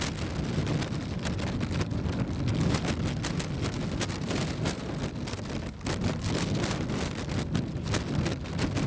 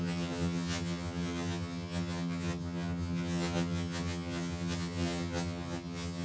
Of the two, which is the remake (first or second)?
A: second